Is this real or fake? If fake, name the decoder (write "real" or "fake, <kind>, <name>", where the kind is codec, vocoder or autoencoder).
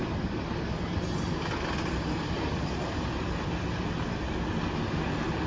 real